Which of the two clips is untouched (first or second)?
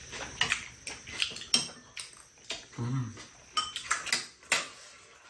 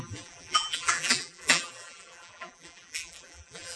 first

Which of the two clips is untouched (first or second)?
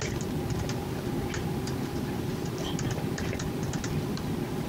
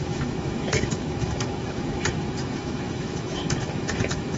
first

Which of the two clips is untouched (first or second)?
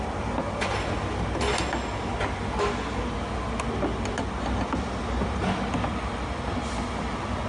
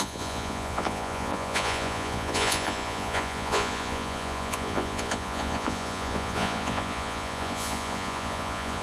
first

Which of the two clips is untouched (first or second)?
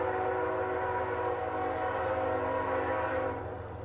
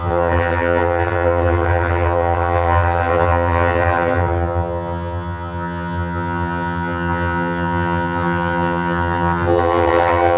first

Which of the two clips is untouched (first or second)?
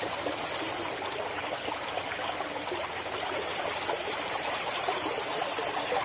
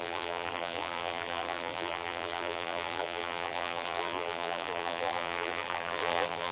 first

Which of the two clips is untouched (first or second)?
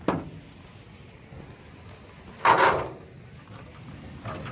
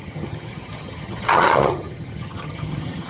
first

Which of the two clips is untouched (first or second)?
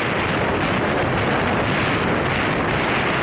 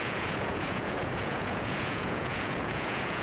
first